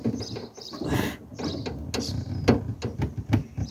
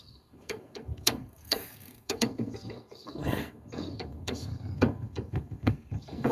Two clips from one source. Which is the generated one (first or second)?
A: second